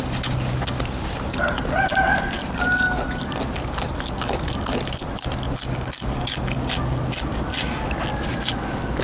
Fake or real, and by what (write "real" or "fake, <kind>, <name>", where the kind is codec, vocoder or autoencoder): real